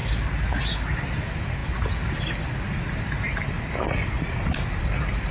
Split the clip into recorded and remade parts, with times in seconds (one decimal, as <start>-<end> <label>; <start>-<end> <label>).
0.0-5.3 recorded